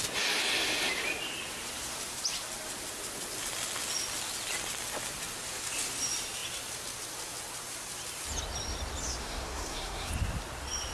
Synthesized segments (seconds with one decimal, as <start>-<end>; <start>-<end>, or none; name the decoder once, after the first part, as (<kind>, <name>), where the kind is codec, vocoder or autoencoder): 9.2-10.1 (codec, SNAC)